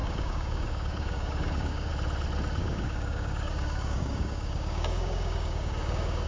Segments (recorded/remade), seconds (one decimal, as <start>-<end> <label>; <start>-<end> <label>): 0.0-1.9 remade; 1.9-2.6 recorded; 2.6-6.3 remade